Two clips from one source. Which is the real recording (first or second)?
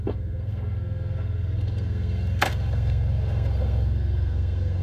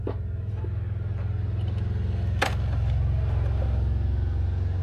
second